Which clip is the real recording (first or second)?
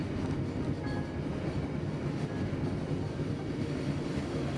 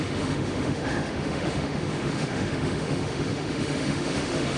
first